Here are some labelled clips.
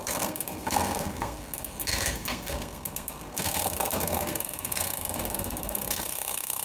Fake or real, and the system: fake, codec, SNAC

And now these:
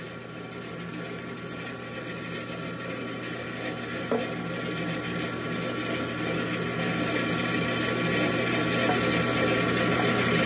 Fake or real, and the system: real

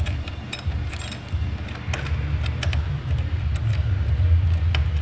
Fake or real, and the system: real